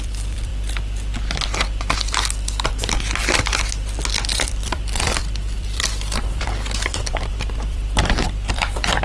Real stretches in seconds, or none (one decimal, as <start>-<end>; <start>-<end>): 0.5-4.4